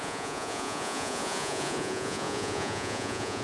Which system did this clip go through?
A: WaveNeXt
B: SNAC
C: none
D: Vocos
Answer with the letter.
D